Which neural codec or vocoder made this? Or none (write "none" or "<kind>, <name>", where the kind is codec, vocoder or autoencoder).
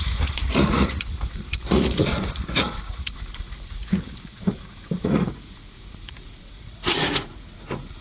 vocoder, Vocos